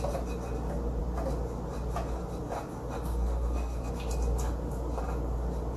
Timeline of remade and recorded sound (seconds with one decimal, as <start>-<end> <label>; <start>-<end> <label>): 0.0-3.1 recorded; 3.1-3.9 remade; 3.9-5.8 recorded